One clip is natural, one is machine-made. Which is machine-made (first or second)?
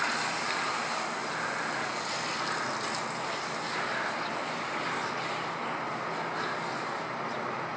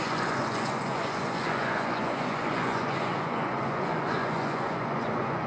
second